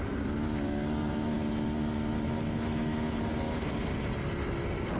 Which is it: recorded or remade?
recorded